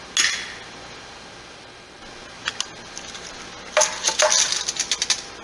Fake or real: real